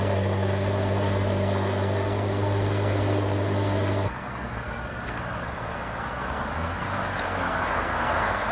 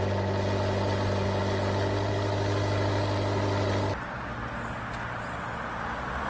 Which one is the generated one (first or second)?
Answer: first